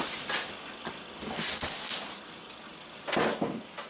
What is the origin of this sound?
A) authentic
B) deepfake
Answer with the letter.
A